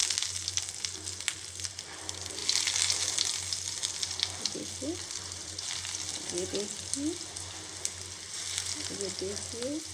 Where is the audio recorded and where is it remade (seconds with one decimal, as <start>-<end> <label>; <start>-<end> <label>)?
0.0-1.7 recorded; 1.7-2.4 remade; 2.4-4.4 recorded; 4.4-6.9 remade; 6.9-8.9 recorded; 8.9-9.9 remade